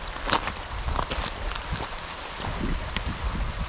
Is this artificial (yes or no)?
no